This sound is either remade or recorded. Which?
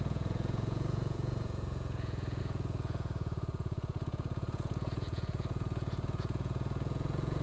remade